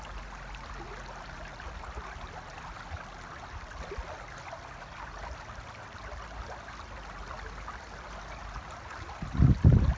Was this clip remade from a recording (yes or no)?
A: no